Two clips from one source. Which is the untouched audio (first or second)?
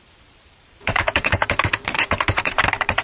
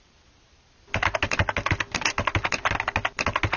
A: second